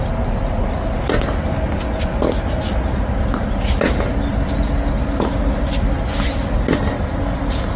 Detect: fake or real real